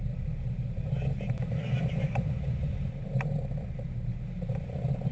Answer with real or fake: fake